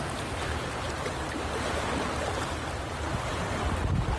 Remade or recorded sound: recorded